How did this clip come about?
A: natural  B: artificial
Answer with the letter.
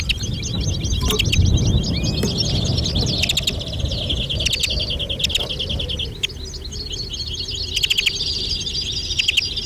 A